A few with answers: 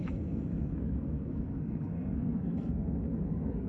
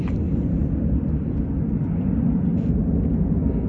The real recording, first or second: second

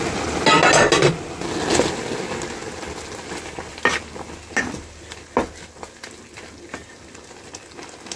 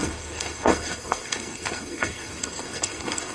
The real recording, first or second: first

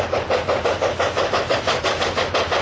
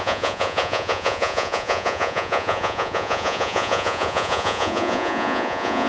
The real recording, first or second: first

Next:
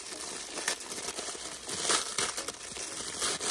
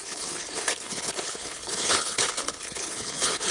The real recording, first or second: first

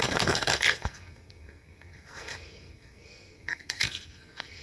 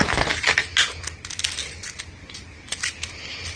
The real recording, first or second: second